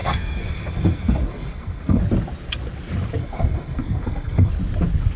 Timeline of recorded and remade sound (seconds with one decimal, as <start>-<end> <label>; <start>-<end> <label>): 0.0-2.0 remade; 2.0-3.2 recorded; 3.2-4.5 remade; 4.5-5.2 recorded